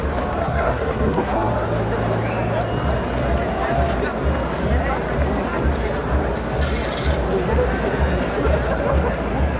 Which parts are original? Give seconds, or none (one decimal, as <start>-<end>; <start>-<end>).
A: 0.0-0.4; 1.5-9.6